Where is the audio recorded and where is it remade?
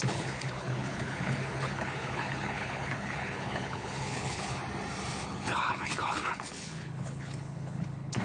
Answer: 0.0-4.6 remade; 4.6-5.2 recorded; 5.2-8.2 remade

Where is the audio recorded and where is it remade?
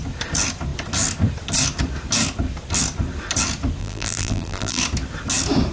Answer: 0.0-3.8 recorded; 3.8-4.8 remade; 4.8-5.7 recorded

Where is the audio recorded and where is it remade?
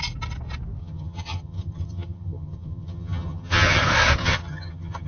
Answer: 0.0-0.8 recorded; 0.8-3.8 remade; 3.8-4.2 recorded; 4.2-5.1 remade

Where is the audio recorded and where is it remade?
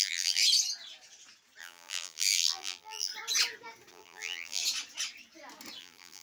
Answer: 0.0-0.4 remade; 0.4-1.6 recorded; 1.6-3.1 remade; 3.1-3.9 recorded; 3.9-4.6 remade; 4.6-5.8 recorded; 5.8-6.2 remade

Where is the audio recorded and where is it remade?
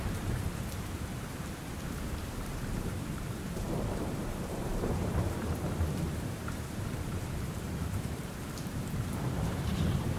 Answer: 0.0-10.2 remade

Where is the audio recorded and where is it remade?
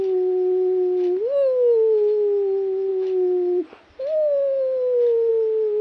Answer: 0.0-5.8 recorded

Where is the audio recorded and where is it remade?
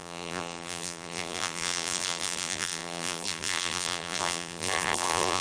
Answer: 0.0-5.4 remade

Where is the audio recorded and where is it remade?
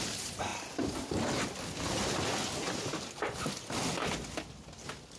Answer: 0.0-5.2 recorded